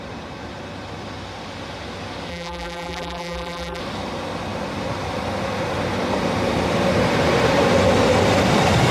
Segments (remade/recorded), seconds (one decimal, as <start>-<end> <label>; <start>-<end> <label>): 0.0-2.3 recorded; 2.3-3.8 remade; 3.8-8.9 recorded